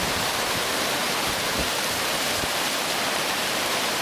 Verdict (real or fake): fake